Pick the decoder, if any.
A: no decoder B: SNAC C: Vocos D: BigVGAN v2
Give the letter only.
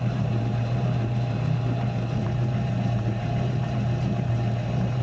D